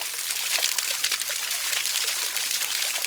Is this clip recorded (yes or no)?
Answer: yes